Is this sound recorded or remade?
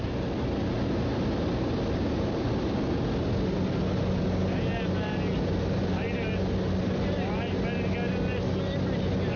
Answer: recorded